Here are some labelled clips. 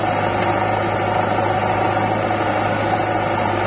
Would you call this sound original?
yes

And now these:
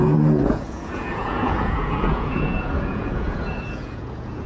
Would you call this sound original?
no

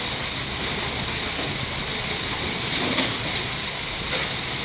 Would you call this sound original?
yes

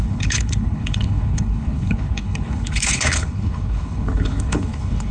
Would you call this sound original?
no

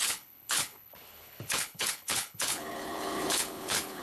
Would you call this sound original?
no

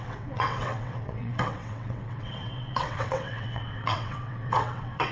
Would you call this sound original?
no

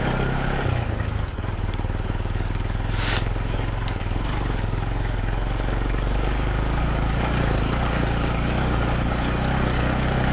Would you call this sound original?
no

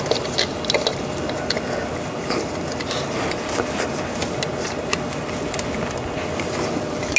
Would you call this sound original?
yes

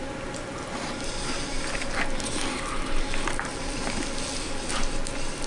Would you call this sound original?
yes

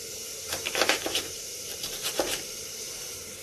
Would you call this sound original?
no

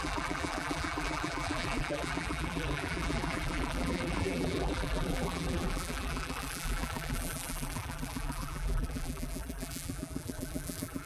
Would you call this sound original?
no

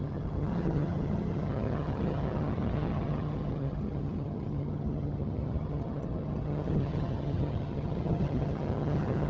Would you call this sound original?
no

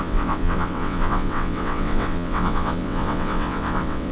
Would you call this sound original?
no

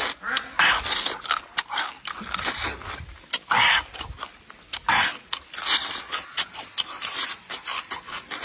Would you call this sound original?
yes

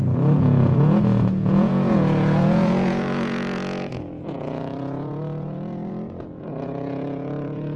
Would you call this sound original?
no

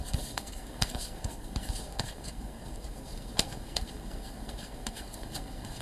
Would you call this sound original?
no